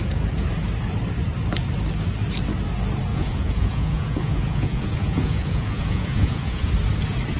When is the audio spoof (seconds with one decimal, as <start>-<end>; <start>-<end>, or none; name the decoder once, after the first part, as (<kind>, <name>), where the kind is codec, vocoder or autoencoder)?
3.1-6.7 (vocoder, Vocos)